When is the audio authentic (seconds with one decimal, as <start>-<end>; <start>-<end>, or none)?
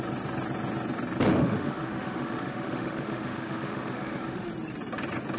0.0-1.3; 4.5-5.4